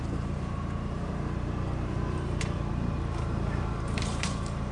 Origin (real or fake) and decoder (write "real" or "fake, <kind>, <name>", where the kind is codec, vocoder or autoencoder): fake, vocoder, BigVGAN v2